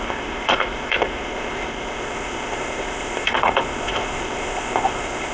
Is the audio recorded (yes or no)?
no